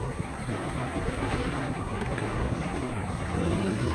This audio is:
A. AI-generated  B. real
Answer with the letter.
A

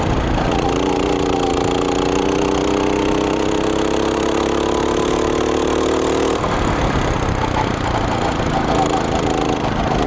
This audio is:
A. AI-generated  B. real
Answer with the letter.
B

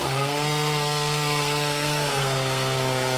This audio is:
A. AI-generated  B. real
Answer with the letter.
A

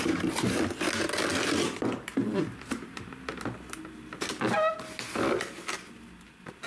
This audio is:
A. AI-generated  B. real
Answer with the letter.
B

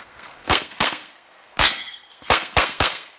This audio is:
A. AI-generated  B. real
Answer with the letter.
A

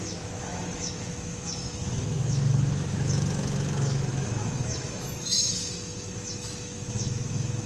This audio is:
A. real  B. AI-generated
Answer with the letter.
B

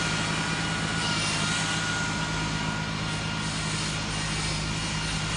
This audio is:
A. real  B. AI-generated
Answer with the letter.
A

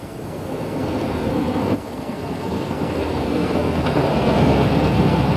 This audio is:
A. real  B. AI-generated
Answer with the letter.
B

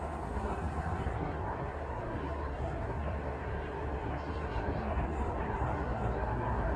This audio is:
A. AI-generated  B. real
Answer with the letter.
A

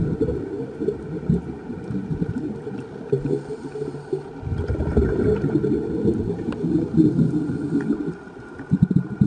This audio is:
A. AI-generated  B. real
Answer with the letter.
B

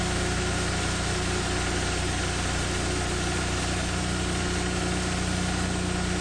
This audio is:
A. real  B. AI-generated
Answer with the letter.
A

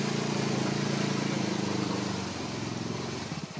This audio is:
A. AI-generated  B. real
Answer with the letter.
B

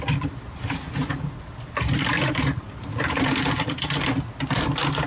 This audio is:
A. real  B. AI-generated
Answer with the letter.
A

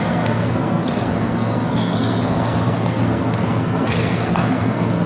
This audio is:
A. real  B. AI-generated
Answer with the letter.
B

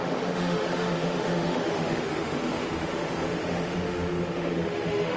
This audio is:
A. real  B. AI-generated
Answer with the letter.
B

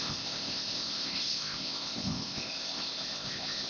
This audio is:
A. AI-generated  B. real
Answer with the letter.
A